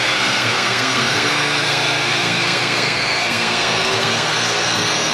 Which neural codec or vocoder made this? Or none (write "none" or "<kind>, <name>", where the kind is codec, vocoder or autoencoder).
codec, SNAC